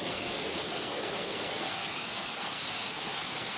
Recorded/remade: remade